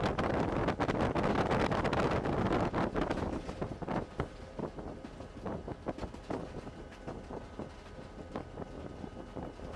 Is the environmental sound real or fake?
real